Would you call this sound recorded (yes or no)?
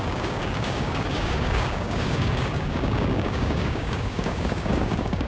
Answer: no